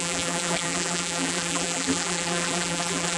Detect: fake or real fake